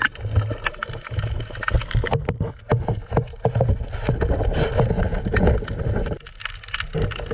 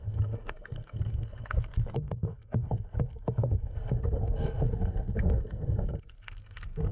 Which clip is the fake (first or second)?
second